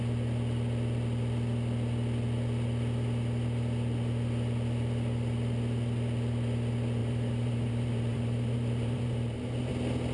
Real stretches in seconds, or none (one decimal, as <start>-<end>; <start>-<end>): 0.0-7.0; 9.7-10.1